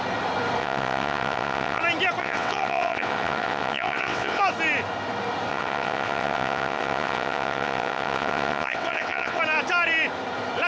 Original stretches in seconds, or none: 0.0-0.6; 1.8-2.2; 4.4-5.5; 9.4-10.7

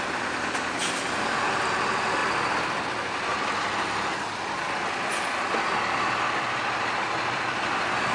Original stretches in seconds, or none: 0.0-8.1